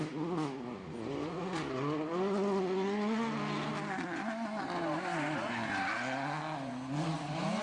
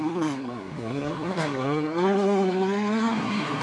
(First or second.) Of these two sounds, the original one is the first